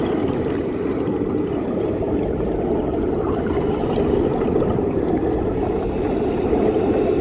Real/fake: real